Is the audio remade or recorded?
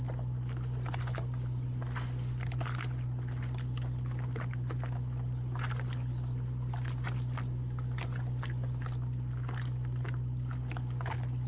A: recorded